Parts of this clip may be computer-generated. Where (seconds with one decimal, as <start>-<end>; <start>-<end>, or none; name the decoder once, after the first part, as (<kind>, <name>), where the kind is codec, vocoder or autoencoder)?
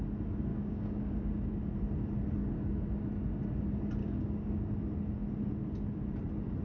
0.5-1.5 (codec, DAC); 2.4-3.0; 4.0-4.7